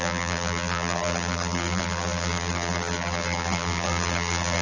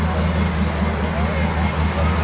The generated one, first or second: first